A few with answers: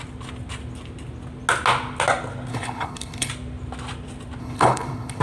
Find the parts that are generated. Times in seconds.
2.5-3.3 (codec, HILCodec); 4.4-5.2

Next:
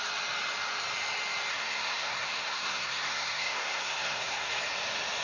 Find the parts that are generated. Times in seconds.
1.5-4.6 (codec, SNAC)

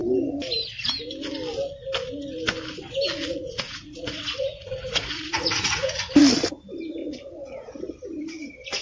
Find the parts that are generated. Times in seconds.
3.3-6.2 (vocoder, Vocos); 7.0-7.8

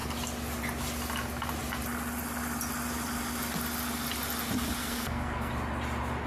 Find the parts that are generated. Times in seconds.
4.8-5.5 (codec, SNAC)

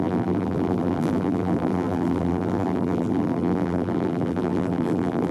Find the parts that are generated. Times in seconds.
0.0-5.3 (vocoder, BigVGAN v2)

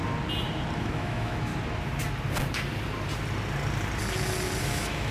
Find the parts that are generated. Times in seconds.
0.8-1.5 (autoencoder, DAC-VAE); 4.6-5.1

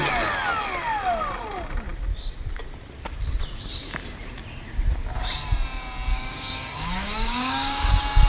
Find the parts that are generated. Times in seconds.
6.1-7.9 (codec, DAC)

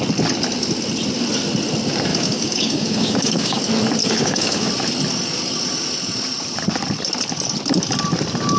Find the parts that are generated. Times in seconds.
2.1-3.6 (codec, DAC); 4.0-4.7